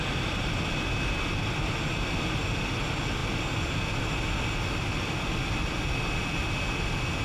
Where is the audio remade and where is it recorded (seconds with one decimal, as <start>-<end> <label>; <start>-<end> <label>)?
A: 0.0-7.2 recorded